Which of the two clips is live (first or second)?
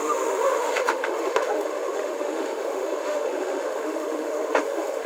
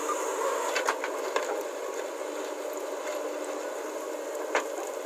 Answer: second